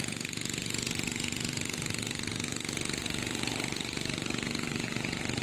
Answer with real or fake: fake